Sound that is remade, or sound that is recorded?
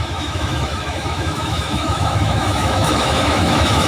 remade